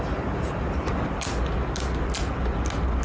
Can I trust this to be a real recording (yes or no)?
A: yes